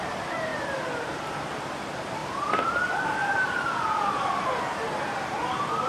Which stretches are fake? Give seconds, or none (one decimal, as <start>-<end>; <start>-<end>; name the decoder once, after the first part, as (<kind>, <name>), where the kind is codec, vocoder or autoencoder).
2.2-5.9 (vocoder, BigVGAN v2)